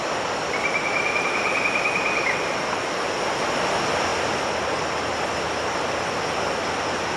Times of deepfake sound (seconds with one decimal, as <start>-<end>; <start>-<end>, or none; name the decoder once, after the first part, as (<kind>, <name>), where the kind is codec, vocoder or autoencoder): none